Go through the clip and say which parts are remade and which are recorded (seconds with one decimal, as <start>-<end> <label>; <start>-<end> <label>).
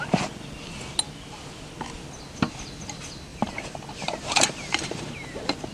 0.0-3.3 recorded; 3.3-5.1 remade; 5.1-5.7 recorded